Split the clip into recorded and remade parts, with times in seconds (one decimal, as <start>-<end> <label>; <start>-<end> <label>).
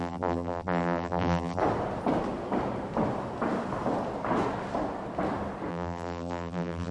0.0-1.6 remade; 1.6-5.7 recorded; 5.7-6.9 remade